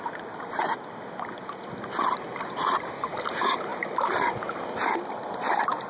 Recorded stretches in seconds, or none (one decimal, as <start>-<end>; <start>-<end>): 0.0-3.7; 4.6-5.9

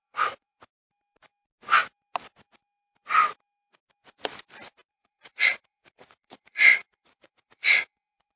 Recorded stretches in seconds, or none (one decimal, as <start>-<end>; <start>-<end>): 0.8-4.9

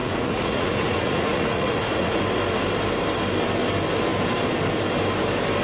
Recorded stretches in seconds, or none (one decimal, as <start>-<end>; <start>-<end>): 2.2-5.6